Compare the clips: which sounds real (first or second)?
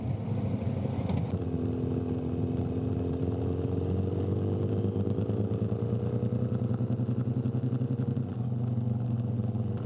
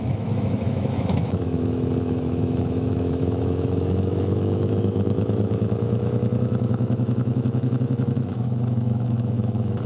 first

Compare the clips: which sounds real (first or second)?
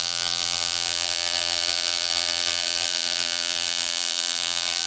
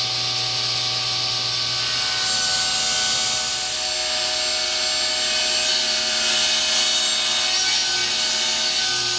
second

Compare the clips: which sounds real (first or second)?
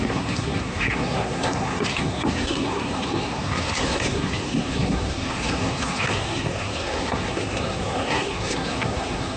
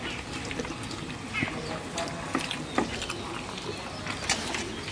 second